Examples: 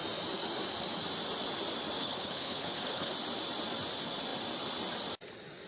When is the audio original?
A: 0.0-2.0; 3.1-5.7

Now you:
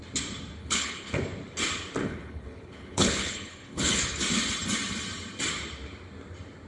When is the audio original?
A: 0.0-0.6; 1.2-2.0; 4.0-6.7

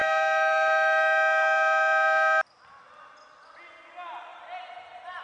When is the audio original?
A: 0.0-4.3

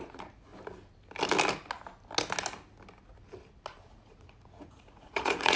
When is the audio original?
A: 0.5-3.9

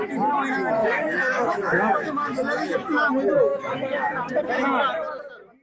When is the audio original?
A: 0.0-0.8; 3.1-3.5; 4.3-5.6